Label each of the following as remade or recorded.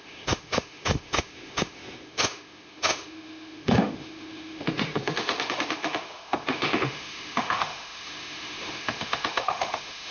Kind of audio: remade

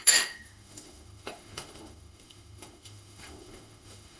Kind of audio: remade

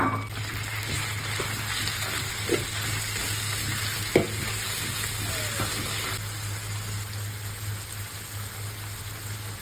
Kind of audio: recorded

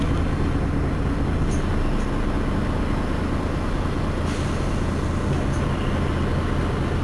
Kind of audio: recorded